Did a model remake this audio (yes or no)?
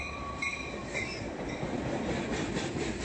yes